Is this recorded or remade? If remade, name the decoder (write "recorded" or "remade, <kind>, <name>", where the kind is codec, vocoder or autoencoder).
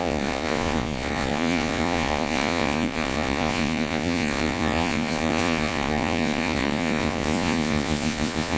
remade, vocoder, Vocos